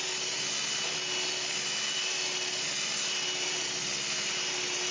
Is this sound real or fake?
real